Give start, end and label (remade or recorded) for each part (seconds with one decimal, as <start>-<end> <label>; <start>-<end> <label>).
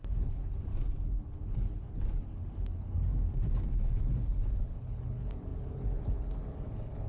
0.0-0.7 remade; 0.7-1.2 recorded; 1.2-3.1 remade; 3.1-3.7 recorded; 3.7-7.1 remade